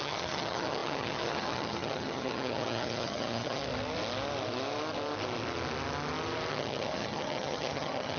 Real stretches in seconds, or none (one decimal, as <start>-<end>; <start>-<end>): 3.6-6.5